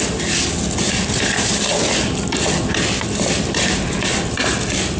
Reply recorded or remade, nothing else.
recorded